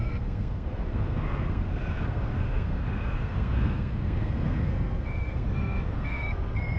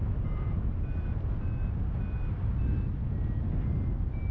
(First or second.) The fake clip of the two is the first